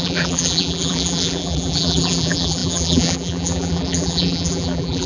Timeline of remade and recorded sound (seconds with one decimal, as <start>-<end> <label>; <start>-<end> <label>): 0.0-5.1 remade

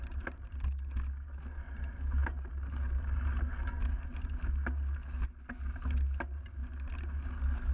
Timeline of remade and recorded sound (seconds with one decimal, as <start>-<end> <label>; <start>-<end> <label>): 0.0-7.7 recorded

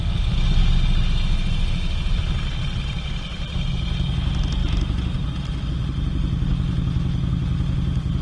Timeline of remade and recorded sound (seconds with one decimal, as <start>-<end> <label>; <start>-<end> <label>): 0.0-4.6 recorded; 4.6-5.4 remade; 5.4-8.2 recorded

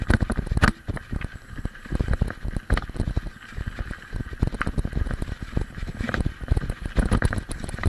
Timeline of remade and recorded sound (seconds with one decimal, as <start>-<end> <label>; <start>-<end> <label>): 0.0-0.9 recorded; 0.9-1.9 remade; 1.9-5.0 recorded; 5.0-7.9 remade

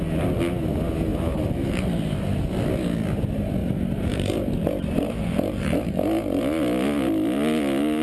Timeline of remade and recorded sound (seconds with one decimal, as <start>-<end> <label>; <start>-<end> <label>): 0.0-1.1 recorded; 1.1-2.4 remade; 2.4-3.6 recorded; 3.6-6.4 remade; 6.4-8.0 recorded

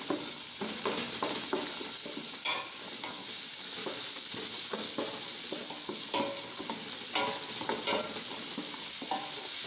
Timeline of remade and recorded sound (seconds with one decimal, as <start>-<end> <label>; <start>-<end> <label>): 0.0-9.7 recorded

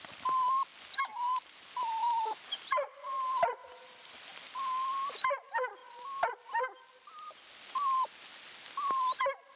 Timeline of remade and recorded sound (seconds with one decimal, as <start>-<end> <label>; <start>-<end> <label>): 0.0-0.7 recorded; 0.7-4.5 remade; 4.5-5.8 recorded; 5.8-6.4 remade; 6.4-9.6 recorded

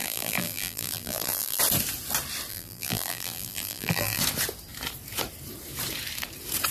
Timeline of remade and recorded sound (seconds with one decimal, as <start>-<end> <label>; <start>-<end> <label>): 0.0-1.6 remade; 1.6-2.5 recorded; 2.5-4.2 remade; 4.2-6.7 recorded